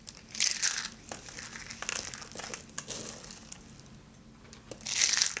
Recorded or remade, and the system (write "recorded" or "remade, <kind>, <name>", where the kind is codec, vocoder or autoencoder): recorded